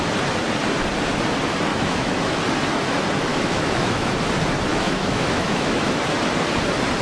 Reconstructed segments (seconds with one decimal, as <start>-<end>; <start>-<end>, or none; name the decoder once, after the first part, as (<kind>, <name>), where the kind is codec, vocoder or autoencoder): 1.7-2.4 (autoencoder, DAC-VAE); 3.3-4.1; 4.7-6.0